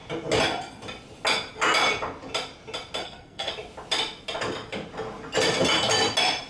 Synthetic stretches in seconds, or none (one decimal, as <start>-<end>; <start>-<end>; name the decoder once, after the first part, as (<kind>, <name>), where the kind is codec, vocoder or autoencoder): 3.0-3.5 (codec, SNAC)